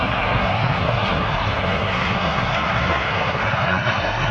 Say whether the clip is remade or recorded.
remade